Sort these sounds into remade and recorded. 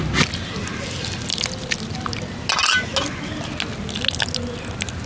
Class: recorded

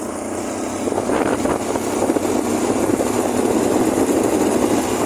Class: recorded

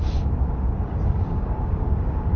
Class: remade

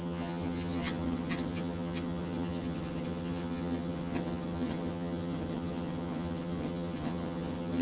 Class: remade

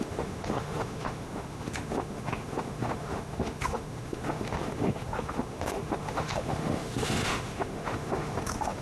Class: remade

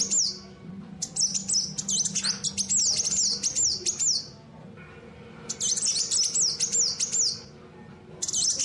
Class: recorded